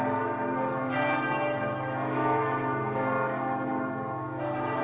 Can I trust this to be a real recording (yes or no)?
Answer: no